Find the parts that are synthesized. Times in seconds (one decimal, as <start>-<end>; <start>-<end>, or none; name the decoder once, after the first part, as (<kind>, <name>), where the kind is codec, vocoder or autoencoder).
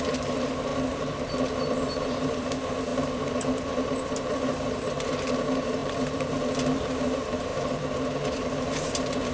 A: 0.0-0.7 (vocoder, BigVGAN v2); 1.6-9.3